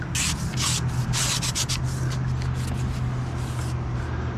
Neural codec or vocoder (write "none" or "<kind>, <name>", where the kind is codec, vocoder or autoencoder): none